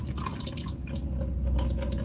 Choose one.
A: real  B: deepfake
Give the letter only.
A